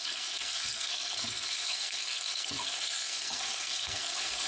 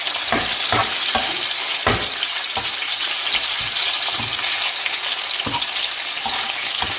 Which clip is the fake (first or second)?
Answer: first